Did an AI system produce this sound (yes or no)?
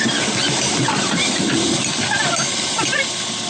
no